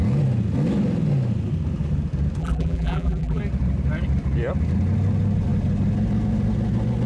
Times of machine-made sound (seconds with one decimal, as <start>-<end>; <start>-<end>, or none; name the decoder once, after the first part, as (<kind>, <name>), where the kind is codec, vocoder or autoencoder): 2.4-3.4 (vocoder, BigVGAN v2)